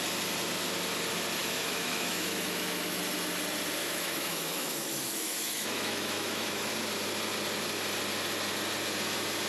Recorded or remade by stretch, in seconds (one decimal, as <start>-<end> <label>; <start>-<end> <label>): 0.0-1.4 recorded; 1.4-3.0 remade; 3.0-3.8 recorded; 3.8-6.7 remade; 6.7-9.5 recorded